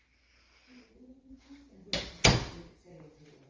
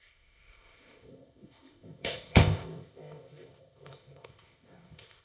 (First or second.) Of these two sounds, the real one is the first